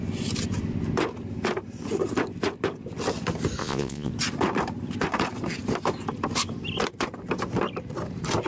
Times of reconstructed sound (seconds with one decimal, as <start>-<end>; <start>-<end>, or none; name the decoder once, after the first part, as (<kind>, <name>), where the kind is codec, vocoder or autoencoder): 3.6-4.1 (vocoder, Vocos)